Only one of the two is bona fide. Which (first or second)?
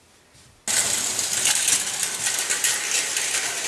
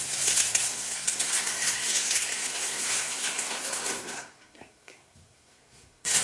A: first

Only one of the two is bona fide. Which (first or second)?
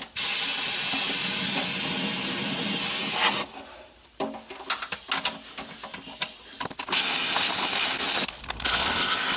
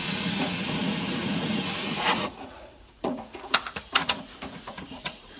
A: first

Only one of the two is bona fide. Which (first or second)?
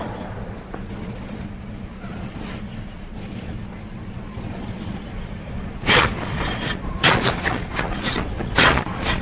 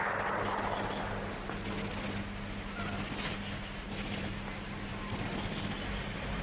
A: second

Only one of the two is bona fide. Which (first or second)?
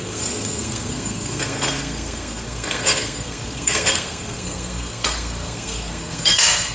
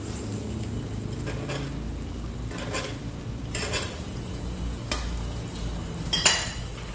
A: second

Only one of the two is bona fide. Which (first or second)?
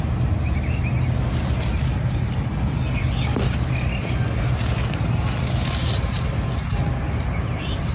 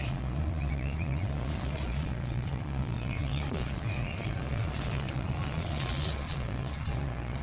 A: first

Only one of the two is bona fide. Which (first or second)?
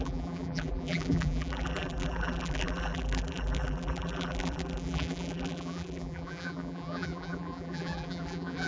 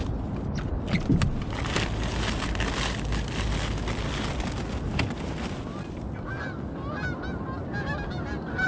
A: second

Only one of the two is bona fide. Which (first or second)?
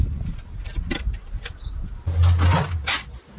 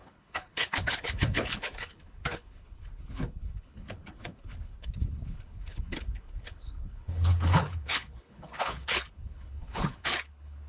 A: first